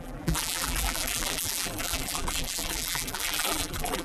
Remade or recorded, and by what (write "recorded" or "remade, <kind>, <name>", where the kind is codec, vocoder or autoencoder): remade, vocoder, BigVGAN v2